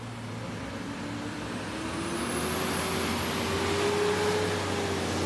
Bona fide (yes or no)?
yes